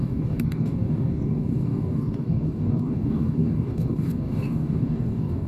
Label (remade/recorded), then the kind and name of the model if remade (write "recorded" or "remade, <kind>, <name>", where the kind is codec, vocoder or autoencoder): remade, codec, DAC